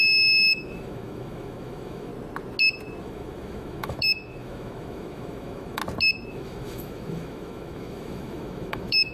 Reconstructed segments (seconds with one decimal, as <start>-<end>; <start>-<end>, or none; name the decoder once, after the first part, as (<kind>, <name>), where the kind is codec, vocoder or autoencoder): 0.0-2.1 (autoencoder, DAC-VAE); 3.0-5.8; 6.3-9.1

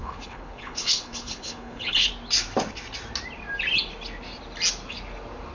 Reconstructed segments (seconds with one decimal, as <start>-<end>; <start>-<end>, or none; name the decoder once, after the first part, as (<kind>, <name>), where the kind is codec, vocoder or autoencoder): 0.0-2.1 (codec, HILCodec)

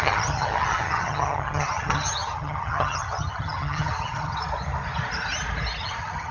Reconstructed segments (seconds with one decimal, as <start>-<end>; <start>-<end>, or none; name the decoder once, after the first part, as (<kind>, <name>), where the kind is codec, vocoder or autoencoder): 0.0-4.4 (vocoder, HiFi-GAN); 5.8-6.3